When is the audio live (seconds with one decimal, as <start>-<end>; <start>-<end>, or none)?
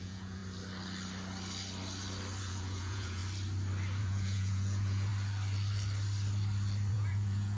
0.4-2.4; 3.2-4.0; 5.1-6.9